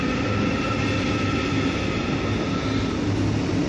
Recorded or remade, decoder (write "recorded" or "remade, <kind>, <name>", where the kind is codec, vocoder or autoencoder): recorded